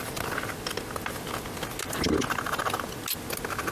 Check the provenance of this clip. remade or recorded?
recorded